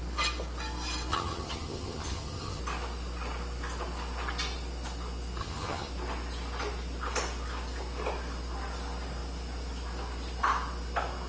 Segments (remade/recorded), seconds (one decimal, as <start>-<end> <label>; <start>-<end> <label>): 0.0-1.1 recorded; 1.1-2.6 remade; 2.6-5.4 recorded; 5.4-5.9 remade; 5.9-11.3 recorded

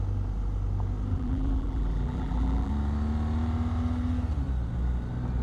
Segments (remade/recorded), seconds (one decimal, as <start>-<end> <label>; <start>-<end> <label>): 0.0-1.1 recorded; 1.1-2.7 remade; 2.7-5.4 recorded